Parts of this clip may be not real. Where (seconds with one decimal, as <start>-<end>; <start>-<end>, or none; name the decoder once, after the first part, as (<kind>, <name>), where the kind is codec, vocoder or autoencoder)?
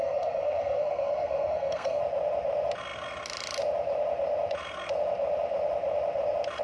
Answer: 0.0-2.0 (codec, SNAC)